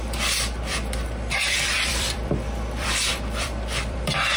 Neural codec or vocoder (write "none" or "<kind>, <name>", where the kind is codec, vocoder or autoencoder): vocoder, BigVGAN v2